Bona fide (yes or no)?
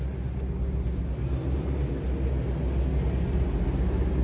yes